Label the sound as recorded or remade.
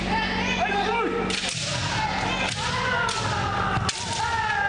recorded